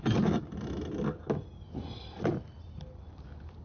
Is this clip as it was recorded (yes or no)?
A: yes